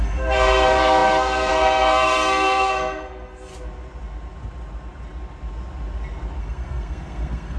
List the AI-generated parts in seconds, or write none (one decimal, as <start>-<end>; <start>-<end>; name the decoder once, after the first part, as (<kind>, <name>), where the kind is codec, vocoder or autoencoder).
0.0-3.5 (codec, SNAC); 6.4-7.6